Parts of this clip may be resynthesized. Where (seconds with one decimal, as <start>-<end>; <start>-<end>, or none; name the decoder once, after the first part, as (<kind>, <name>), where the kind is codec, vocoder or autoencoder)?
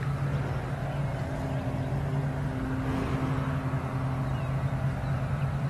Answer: none